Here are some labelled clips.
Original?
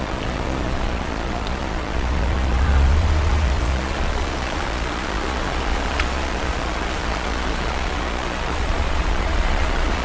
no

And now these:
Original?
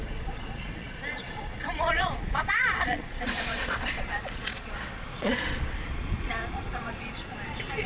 no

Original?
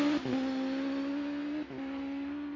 yes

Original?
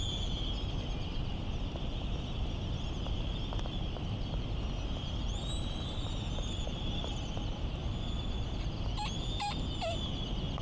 yes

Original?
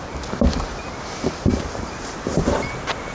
yes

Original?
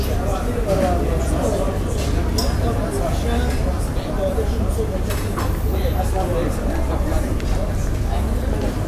yes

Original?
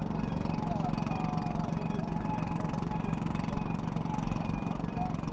yes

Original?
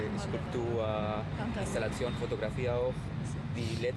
yes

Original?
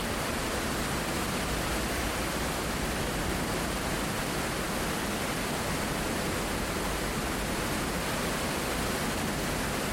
yes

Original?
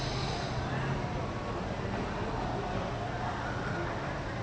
yes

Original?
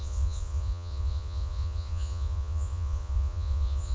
no